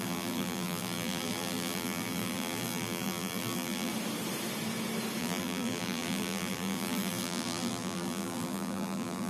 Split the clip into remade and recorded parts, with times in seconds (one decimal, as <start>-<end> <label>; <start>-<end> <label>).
0.0-3.9 remade; 3.9-5.2 recorded; 5.2-9.3 remade